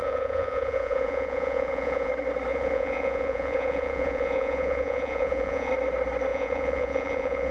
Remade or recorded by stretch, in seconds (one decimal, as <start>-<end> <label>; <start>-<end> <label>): 0.0-2.1 remade; 2.1-2.5 recorded; 2.5-5.7 remade; 5.7-6.3 recorded; 6.3-7.5 remade